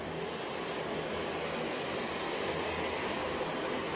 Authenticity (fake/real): real